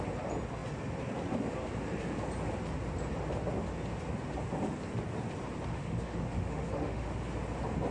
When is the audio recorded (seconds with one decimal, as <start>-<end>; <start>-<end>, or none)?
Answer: 0.0-5.7; 7.1-7.9